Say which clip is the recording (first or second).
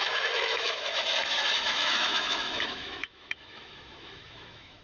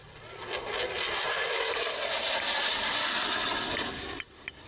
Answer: second